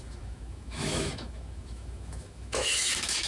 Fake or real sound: fake